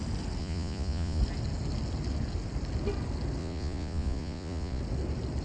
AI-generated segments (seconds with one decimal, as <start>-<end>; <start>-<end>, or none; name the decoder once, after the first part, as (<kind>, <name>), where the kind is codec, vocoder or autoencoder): 0.4-1.2 (vocoder, Vocos); 3.4-4.8